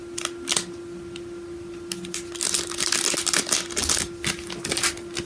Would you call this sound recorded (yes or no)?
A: yes